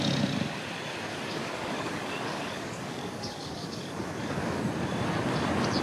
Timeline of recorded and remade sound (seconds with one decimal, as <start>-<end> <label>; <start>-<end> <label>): 0.0-1.1 recorded; 1.1-4.6 remade; 4.6-5.8 recorded